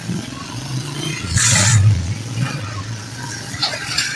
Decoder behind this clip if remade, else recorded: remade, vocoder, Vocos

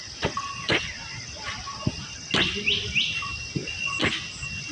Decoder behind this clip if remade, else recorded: recorded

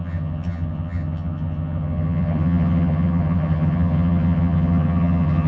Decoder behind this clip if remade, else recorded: remade, vocoder, HiFi-GAN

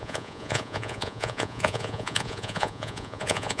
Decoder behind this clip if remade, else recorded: remade, vocoder, Vocos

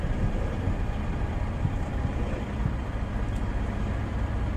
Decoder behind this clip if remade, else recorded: remade, vocoder, BigVGAN v2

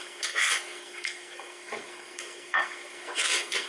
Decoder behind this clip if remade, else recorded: remade, codec, SNAC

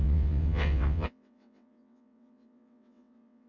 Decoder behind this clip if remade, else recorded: remade, vocoder, WaveNeXt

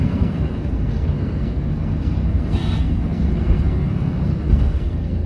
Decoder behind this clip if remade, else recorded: remade, codec, SNAC